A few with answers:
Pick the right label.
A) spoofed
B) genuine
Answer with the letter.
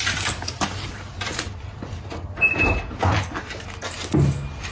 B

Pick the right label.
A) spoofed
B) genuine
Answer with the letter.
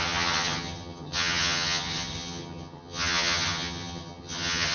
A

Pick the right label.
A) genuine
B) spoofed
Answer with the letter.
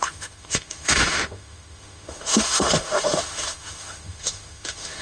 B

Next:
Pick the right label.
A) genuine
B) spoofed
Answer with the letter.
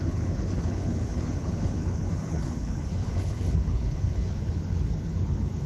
B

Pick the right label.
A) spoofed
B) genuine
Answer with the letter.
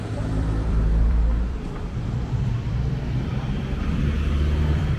A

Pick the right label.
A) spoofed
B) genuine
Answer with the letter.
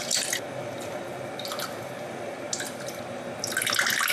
B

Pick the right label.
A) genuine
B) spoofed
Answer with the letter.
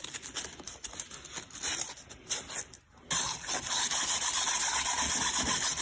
A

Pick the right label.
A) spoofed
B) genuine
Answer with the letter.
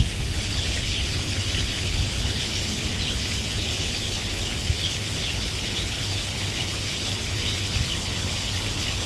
A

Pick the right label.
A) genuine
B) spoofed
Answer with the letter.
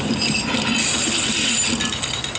A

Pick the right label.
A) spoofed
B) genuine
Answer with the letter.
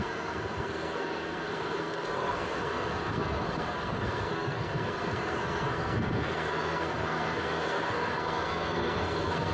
A